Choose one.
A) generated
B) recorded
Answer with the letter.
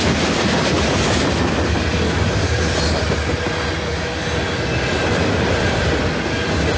B